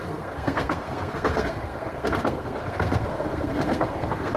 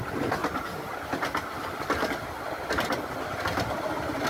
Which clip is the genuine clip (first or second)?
second